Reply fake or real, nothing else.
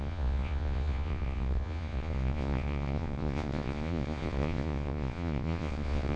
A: fake